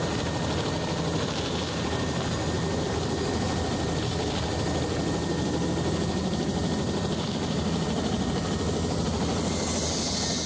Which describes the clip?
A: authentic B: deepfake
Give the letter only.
A